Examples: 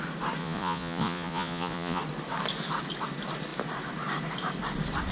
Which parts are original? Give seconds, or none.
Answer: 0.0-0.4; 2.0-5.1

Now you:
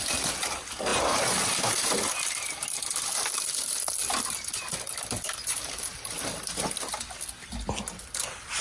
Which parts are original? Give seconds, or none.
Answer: 0.0-8.6

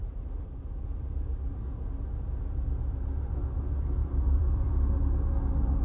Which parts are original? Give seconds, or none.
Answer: 1.6-4.0; 5.0-5.8

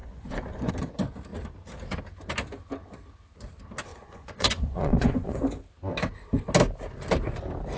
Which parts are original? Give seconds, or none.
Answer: 0.7-3.9; 5.4-7.8

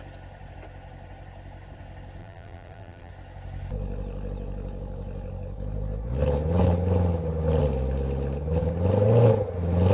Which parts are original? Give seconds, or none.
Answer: 0.0-2.2; 3.1-9.9

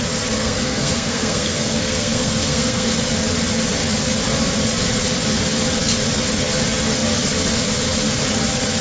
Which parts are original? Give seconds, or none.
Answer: 0.0-0.4; 2.9-8.8

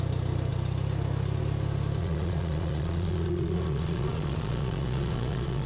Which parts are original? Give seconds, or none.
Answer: 0.0-2.0

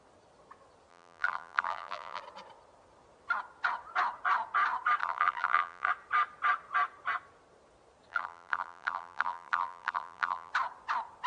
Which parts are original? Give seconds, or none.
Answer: 0.0-0.9; 2.2-5.0; 5.9-8.1; 10.5-11.3